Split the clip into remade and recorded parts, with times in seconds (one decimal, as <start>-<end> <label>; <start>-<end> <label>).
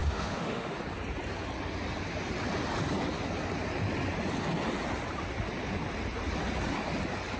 0.0-0.8 remade; 0.8-7.4 recorded